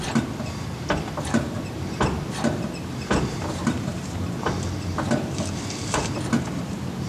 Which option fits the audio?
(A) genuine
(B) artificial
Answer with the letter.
B